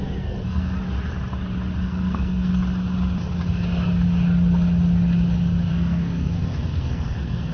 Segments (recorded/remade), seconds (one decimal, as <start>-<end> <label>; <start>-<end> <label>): 0.0-0.8 remade; 0.8-1.8 recorded; 1.8-2.5 remade; 2.5-5.7 recorded; 5.7-7.5 remade